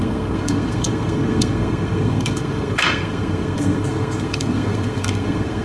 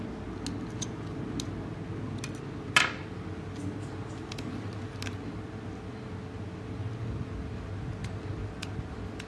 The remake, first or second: first